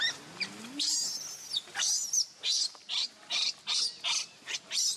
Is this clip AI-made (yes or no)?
no